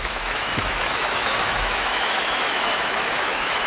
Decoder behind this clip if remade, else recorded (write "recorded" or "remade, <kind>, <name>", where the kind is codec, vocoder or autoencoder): remade, autoencoder, DAC-VAE